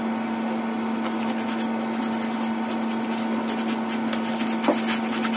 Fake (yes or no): no